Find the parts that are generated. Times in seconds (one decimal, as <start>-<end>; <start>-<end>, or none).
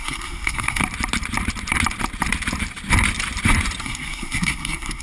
0.0-0.8; 3.8-5.0